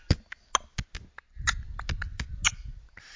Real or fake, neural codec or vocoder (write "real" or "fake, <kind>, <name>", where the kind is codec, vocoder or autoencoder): real